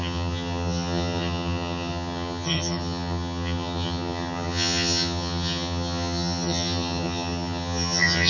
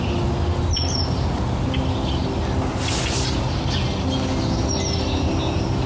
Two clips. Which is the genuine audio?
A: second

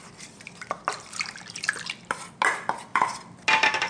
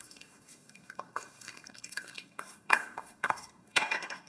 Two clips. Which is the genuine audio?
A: first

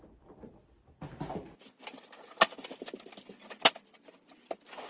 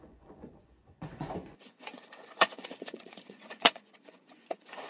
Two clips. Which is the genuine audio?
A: first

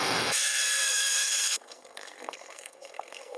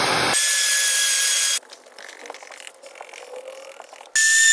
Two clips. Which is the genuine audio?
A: second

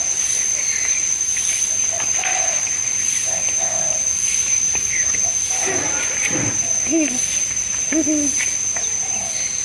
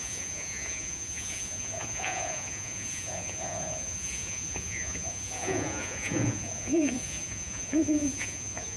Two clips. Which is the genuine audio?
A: first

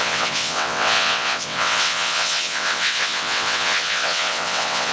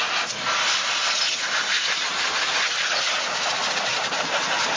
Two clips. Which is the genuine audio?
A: second